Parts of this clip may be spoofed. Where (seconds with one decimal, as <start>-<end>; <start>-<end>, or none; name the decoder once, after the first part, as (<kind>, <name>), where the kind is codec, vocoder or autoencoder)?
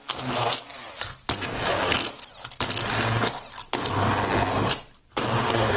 0.7-1.8 (vocoder, BigVGAN v2); 4.6-5.8